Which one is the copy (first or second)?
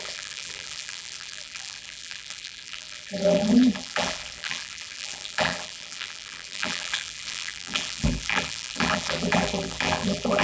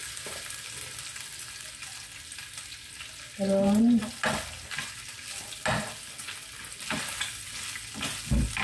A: first